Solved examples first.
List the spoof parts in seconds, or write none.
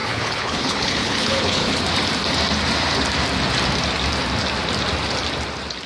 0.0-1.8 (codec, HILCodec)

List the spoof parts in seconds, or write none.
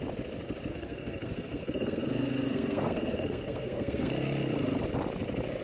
0.7-4.1 (codec, SNAC)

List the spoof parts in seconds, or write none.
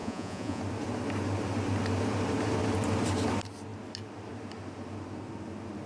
0.0-0.6 (vocoder, Vocos)